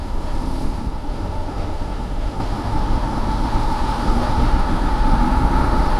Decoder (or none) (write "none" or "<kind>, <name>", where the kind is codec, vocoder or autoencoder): autoencoder, DAC-VAE